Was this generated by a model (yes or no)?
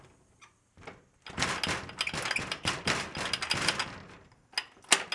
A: no